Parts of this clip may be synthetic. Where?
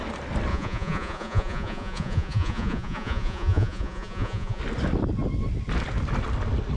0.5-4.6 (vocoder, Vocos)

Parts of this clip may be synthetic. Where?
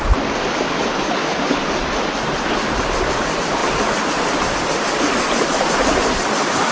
none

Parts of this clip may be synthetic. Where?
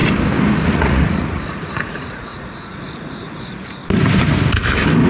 0.7-3.8 (vocoder, Vocos)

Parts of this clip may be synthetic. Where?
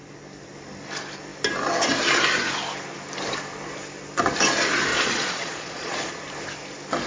4.9-6.2 (vocoder, Vocos)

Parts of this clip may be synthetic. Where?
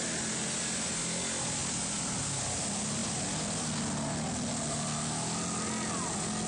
none